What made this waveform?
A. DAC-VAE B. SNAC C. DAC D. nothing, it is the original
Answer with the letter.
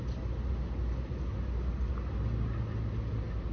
D